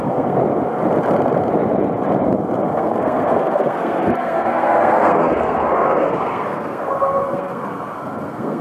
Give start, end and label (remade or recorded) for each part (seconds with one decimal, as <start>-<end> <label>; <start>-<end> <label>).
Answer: 0.0-0.4 remade; 0.4-2.7 recorded; 2.7-8.6 remade